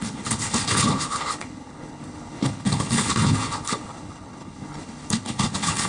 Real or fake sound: fake